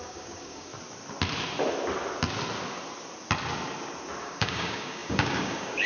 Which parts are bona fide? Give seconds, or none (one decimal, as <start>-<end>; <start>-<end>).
0.7-4.2